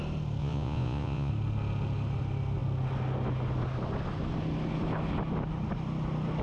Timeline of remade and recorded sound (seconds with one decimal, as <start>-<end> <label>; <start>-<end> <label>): 0.0-0.4 recorded; 0.4-1.3 remade; 1.3-6.4 recorded